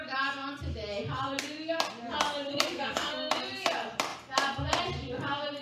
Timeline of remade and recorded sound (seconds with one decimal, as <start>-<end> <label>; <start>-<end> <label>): 0.0-2.5 recorded; 2.5-3.3 remade; 3.3-5.6 recorded